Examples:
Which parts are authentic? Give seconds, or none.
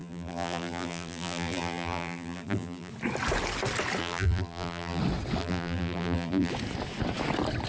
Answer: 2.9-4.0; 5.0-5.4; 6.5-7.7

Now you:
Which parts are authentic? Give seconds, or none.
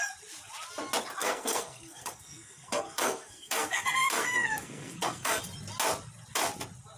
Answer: 0.0-1.2; 5.4-7.0